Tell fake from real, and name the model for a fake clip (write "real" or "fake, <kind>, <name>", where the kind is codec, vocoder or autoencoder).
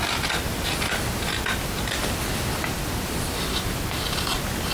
real